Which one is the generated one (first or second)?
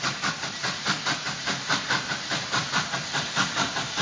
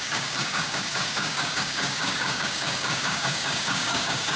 second